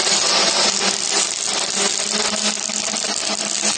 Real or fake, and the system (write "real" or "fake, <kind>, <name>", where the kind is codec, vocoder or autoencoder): real